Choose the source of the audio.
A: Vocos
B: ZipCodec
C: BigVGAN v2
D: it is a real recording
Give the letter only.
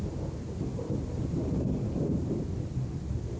D